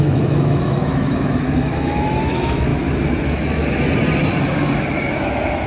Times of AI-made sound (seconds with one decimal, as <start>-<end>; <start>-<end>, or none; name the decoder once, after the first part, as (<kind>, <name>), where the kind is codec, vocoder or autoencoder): 0.0-2.7 (autoencoder, DAC-VAE); 3.2-3.6; 5.1-5.7